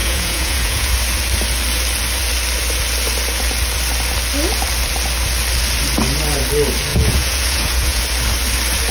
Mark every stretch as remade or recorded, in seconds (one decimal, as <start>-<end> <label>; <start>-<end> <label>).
0.0-0.9 remade; 0.9-6.9 recorded; 6.9-8.0 remade; 8.0-8.9 recorded